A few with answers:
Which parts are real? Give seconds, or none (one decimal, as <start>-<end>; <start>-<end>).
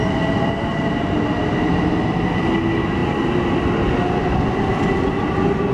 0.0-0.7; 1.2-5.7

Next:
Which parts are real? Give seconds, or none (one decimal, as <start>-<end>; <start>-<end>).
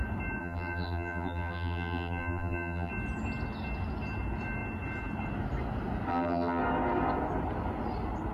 0.0-0.4; 2.9-6.1; 6.6-8.3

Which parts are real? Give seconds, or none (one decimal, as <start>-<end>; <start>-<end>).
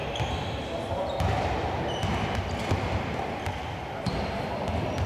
1.0-2.0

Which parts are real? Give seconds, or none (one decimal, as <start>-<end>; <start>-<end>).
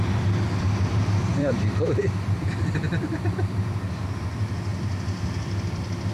none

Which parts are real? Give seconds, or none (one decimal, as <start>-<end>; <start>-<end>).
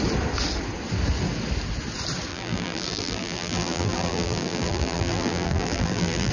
0.0-2.3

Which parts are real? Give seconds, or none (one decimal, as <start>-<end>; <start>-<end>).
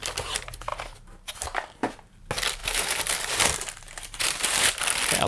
0.0-0.7; 1.3-2.6; 4.8-5.3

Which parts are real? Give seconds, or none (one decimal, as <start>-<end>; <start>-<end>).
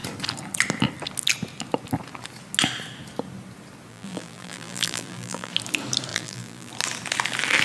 0.0-3.9; 5.5-6.1; 6.7-7.6